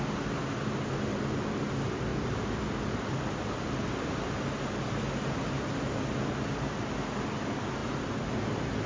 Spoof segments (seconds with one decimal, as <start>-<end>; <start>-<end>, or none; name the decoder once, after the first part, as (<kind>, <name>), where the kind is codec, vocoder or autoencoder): 1.1-1.7 (vocoder, BigVGAN v2); 2.1-2.6